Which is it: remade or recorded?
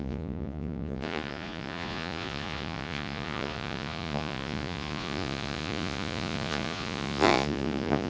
remade